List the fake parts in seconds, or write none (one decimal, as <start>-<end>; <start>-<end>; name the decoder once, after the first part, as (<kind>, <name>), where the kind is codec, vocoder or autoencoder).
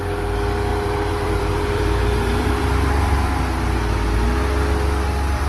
0.7-3.4 (vocoder, BigVGAN v2)